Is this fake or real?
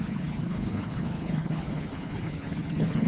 fake